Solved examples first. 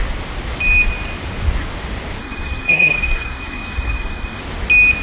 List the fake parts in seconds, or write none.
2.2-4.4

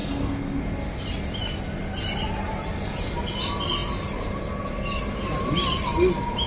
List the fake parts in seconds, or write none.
0.0-0.6

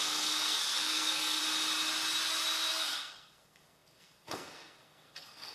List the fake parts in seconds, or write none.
0.0-1.4; 2.7-5.5

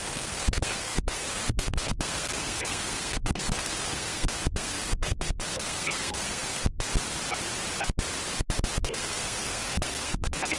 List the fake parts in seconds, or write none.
0.0-6.9; 8.8-10.6

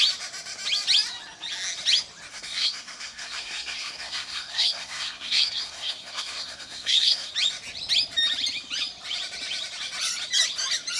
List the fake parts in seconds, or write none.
2.3-7.3

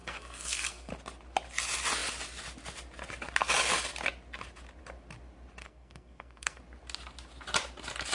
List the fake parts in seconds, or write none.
0.0-0.9; 5.6-6.6

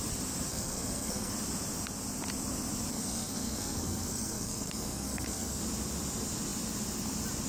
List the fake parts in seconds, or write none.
0.5-1.3; 2.9-5.6